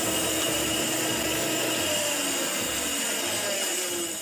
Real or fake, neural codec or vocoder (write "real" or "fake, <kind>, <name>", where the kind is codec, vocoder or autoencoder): real